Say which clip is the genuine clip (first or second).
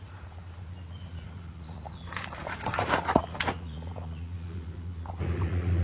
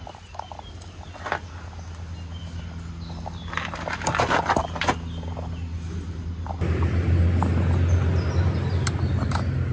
second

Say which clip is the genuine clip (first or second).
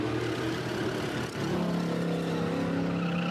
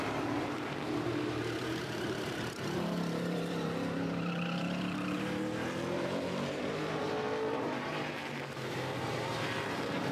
first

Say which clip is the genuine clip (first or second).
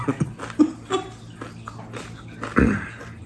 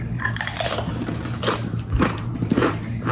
first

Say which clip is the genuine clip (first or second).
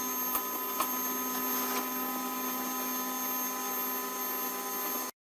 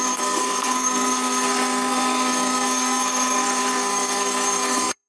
first